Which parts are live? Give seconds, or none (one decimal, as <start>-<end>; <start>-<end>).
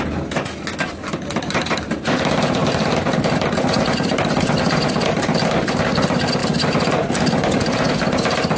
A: 0.0-8.6